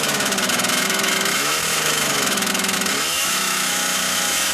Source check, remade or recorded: remade